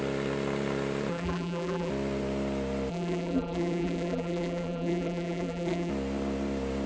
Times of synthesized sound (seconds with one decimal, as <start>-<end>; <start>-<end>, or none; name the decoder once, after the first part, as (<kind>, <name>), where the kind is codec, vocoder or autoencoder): 1.1-1.9 (vocoder, BigVGAN v2); 2.9-5.9